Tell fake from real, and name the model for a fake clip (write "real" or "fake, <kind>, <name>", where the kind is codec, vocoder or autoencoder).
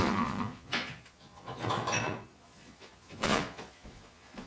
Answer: fake, vocoder, Vocos